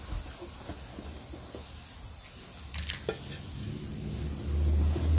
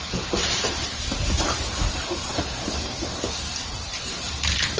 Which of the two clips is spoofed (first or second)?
second